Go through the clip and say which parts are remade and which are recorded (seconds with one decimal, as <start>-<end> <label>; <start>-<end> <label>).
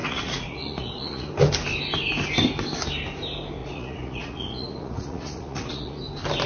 0.0-1.3 remade; 1.3-3.6 recorded; 3.6-6.0 remade; 6.0-6.5 recorded